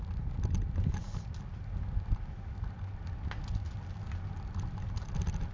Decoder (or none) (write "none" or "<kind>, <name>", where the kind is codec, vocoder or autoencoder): none